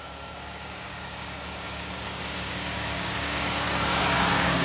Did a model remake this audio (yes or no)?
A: yes